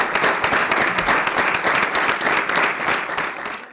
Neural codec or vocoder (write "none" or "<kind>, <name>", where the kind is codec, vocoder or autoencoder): none